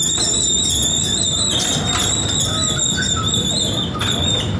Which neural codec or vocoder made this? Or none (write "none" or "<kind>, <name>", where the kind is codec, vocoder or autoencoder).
none